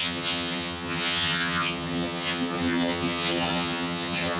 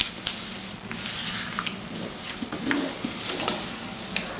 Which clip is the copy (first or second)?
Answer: first